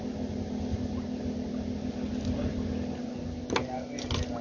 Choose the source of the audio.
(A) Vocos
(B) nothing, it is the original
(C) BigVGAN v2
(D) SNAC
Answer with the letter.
B